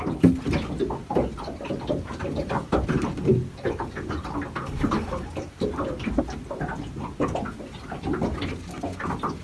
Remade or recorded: recorded